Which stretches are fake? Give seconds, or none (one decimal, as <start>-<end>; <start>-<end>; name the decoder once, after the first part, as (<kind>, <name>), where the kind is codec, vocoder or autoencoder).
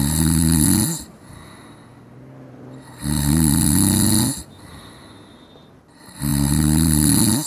none